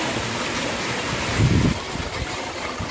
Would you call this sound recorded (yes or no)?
yes